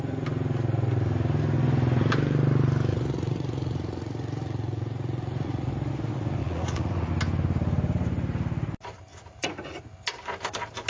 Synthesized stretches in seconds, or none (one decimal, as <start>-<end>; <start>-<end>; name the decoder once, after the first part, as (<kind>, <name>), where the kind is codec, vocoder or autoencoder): 2.9-5.7 (vocoder, Vocos); 6.4-7.1; 9.1-9.8

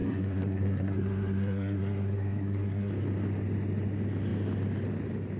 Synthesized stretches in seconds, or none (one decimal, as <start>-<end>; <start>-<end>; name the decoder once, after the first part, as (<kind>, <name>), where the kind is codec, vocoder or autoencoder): 0.0-2.9 (codec, SNAC)

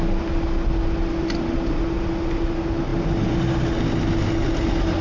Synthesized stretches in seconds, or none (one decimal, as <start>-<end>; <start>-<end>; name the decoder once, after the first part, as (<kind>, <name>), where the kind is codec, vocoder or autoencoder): none

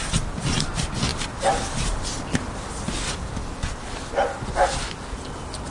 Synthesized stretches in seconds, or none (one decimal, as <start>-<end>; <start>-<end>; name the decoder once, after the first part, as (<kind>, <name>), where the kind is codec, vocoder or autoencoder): none

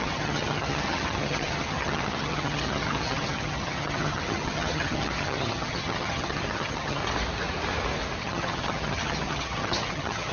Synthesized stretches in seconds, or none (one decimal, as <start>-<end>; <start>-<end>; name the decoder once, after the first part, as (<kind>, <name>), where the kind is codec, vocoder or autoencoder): 0.0-7.0 (vocoder, HiFi-GAN); 8.2-10.3